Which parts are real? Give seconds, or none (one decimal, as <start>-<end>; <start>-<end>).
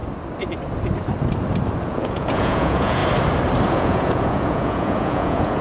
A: 0.0-1.8; 3.0-3.7